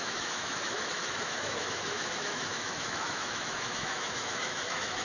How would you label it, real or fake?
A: fake